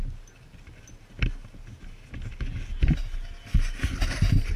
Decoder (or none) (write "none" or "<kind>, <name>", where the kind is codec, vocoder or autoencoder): none